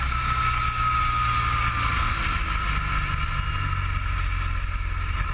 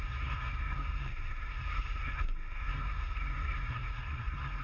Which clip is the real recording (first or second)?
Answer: first